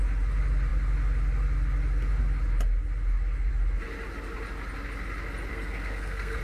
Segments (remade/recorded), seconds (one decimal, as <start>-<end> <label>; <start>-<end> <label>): 0.0-5.5 recorded; 5.5-6.4 remade